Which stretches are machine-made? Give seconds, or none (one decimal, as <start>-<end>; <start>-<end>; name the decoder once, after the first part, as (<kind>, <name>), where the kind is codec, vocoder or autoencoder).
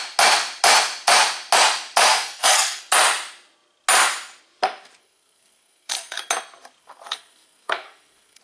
2.1-2.8 (codec, SNAC); 5.0-6.2; 6.8-8.4